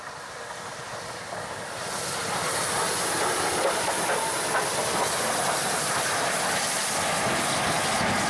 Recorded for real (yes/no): yes